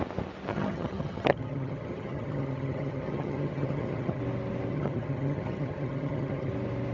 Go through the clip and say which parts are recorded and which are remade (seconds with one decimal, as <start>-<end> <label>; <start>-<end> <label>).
0.0-0.5 recorded; 0.5-4.2 remade; 4.2-4.7 recorded; 4.7-6.5 remade; 6.5-6.9 recorded

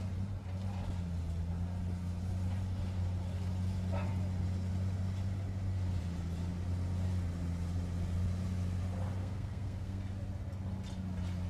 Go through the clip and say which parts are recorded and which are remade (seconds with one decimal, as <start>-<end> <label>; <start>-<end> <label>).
0.0-9.2 recorded; 9.2-10.0 remade; 10.0-11.5 recorded

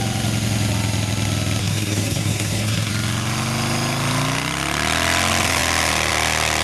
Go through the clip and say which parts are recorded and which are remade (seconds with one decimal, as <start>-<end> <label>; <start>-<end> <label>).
0.0-1.6 recorded; 1.6-2.9 remade; 2.9-6.6 recorded

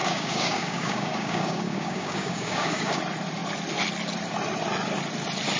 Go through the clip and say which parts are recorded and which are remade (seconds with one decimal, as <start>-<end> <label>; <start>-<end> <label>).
0.0-3.0 remade; 3.0-5.6 recorded

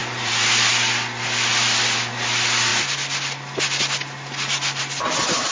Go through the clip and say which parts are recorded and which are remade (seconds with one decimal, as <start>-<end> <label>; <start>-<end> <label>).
0.0-0.7 remade; 0.7-5.5 recorded